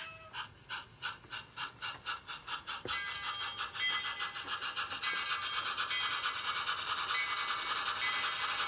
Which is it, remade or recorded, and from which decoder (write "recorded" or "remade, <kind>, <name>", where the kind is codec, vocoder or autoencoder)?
recorded